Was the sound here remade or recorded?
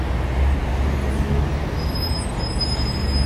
recorded